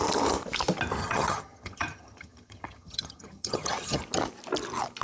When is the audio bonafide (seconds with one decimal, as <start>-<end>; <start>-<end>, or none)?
0.0-1.0; 4.0-5.0